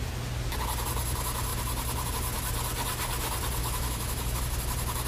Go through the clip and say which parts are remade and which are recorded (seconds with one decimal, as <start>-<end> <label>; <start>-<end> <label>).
0.0-3.6 recorded; 3.6-4.4 remade; 4.4-5.1 recorded